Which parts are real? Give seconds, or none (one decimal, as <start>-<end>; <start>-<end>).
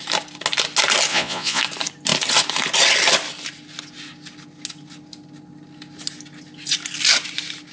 0.0-1.1; 1.6-7.7